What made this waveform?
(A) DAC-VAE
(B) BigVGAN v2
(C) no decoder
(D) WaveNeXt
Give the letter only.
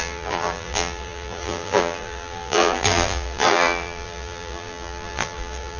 B